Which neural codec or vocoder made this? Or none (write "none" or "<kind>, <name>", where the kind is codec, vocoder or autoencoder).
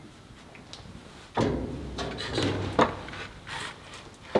none